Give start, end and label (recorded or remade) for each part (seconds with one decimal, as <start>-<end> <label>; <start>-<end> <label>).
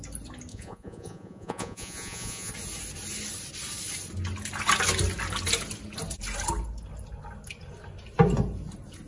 0.0-0.5 recorded; 0.5-2.5 remade; 2.5-9.1 recorded